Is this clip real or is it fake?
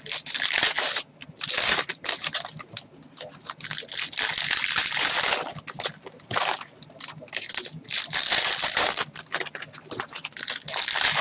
real